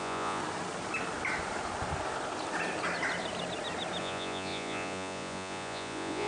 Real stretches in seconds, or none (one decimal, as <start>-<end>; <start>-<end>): 0.4-4.0